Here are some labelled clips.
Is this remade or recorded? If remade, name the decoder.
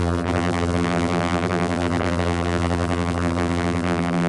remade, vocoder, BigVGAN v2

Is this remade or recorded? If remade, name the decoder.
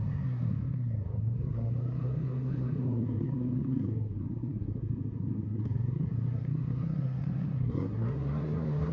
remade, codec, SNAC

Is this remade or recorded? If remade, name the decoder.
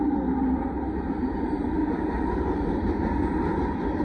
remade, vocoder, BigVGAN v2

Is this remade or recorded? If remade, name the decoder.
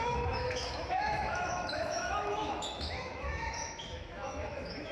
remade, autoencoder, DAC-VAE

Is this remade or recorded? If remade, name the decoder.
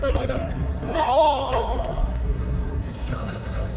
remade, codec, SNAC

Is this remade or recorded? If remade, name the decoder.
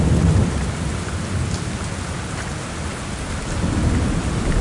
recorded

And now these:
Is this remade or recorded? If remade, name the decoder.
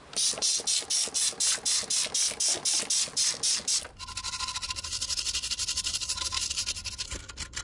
recorded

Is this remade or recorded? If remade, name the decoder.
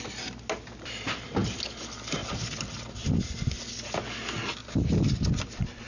recorded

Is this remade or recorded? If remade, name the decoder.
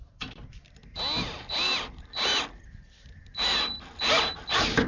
recorded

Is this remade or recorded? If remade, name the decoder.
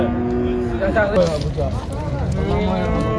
recorded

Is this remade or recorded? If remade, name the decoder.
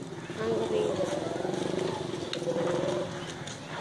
recorded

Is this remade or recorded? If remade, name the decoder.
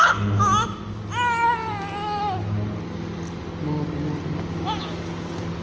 recorded